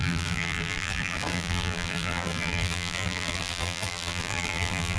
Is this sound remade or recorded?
remade